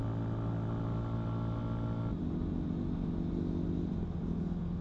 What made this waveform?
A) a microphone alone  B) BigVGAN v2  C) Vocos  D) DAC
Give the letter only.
A